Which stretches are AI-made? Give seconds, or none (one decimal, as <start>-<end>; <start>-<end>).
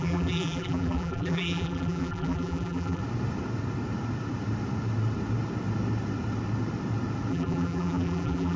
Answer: 0.0-3.0; 7.3-8.6